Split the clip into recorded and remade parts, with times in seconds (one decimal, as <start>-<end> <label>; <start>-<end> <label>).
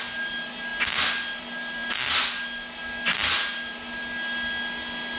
0.0-5.2 recorded